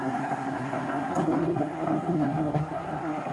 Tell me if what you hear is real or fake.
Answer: fake